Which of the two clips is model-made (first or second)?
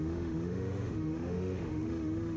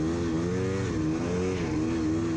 first